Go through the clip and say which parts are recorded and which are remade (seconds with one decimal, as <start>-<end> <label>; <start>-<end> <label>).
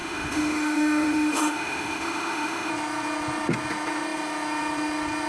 0.0-2.7 remade; 2.7-5.3 recorded